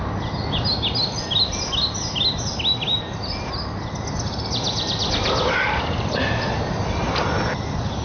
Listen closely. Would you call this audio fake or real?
real